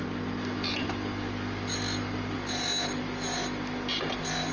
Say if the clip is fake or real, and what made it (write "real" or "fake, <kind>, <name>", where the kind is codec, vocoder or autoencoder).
real